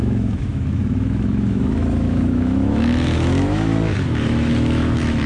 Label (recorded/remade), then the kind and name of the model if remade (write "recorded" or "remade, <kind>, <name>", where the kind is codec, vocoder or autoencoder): remade, autoencoder, DAC-VAE